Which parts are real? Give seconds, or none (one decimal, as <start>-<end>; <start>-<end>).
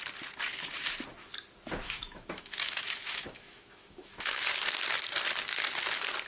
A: 0.0-1.8; 4.4-6.3